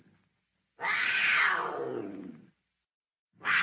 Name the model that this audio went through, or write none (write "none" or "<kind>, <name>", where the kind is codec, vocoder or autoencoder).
none